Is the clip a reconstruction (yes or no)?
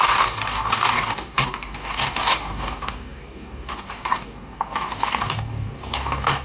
yes